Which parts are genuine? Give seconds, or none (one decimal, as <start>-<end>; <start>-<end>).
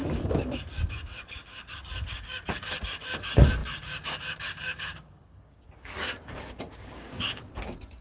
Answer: none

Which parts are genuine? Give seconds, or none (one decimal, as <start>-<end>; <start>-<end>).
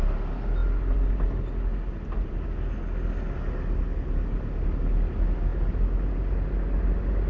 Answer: 0.0-7.3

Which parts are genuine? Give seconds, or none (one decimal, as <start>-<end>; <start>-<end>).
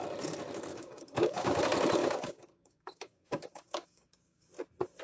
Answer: 0.0-0.7; 1.6-2.0; 4.5-5.0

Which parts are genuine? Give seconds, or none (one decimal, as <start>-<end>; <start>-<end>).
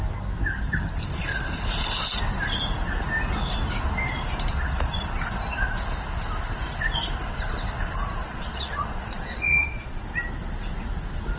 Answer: 0.0-8.2; 10.0-11.4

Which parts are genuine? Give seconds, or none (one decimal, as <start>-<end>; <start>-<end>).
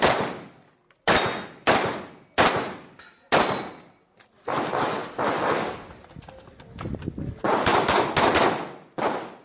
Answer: 0.0-9.4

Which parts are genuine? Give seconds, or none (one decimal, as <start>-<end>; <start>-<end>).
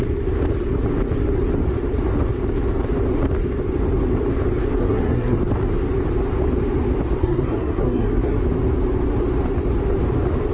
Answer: 0.0-4.8; 5.4-7.2; 8.4-10.5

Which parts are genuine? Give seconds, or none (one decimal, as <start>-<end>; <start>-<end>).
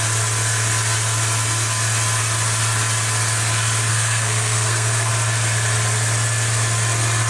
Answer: 0.0-3.9; 5.1-7.3